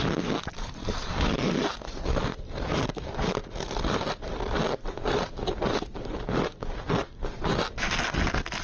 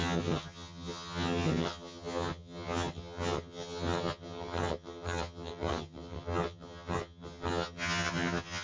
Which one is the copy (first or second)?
second